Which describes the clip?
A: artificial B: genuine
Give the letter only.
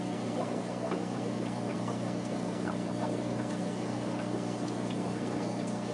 A